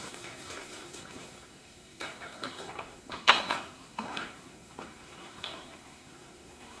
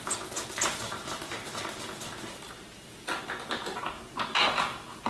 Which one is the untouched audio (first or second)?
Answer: second